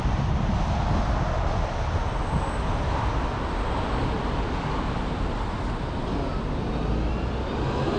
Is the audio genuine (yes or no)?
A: yes